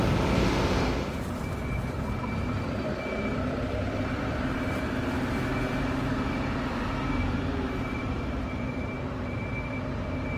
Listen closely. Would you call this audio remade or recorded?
remade